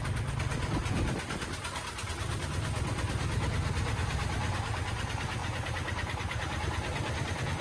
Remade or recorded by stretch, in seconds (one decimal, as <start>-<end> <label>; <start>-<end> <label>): 0.0-7.6 recorded